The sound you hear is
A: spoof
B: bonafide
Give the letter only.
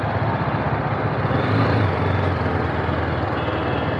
B